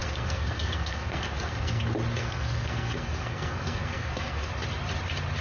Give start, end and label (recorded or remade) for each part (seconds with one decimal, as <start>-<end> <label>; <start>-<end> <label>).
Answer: 0.0-1.8 remade; 1.8-2.2 recorded; 2.2-4.5 remade; 4.5-5.4 recorded